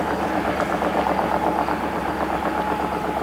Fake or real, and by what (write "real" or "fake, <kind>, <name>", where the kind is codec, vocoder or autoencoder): real